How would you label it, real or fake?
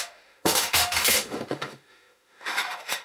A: fake